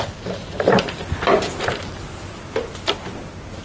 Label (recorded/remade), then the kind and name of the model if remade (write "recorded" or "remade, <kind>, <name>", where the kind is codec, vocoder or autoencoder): recorded